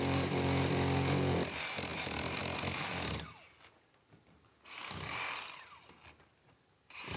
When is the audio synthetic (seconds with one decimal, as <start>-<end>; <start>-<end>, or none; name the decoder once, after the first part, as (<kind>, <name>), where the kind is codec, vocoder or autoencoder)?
none